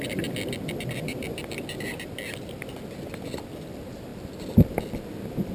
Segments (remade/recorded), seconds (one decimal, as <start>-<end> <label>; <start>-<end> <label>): 0.0-5.5 recorded